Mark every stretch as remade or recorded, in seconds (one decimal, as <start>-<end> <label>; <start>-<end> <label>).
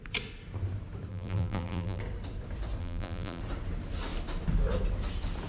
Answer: 0.0-1.1 recorded; 1.1-2.0 remade; 2.0-2.8 recorded; 2.8-3.4 remade; 3.4-5.5 recorded